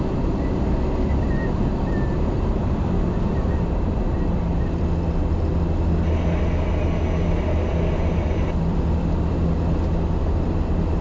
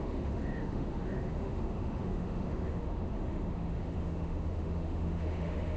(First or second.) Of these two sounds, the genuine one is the first